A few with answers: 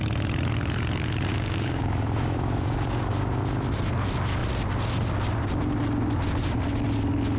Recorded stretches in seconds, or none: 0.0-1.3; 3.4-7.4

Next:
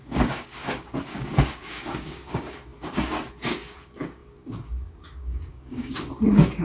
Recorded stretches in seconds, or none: none

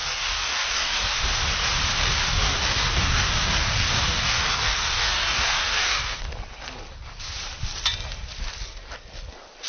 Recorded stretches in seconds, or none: 1.2-2.0; 6.2-9.7

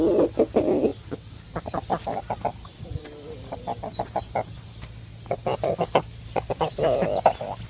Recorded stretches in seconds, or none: 0.0-7.7

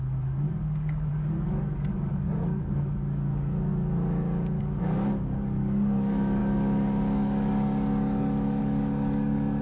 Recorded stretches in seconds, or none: none

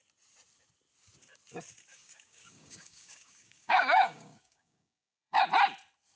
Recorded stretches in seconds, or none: 0.0-1.9; 5.4-6.2